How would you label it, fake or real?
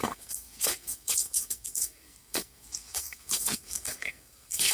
fake